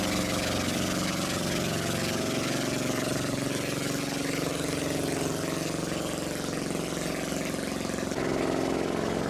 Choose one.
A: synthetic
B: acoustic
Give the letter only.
B